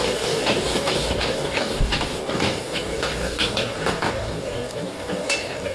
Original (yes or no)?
no